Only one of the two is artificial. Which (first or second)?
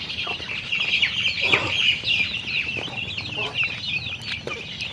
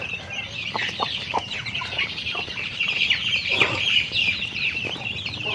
second